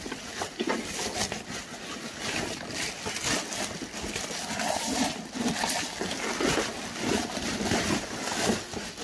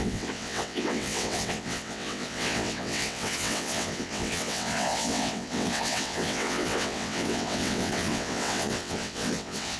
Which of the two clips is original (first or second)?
first